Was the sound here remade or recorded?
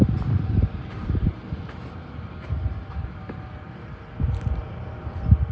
remade